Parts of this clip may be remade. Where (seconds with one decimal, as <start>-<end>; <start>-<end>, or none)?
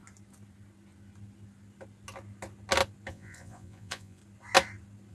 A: 3.1-4.2